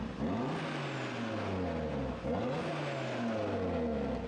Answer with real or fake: real